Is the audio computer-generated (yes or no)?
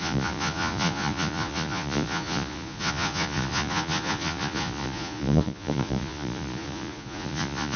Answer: yes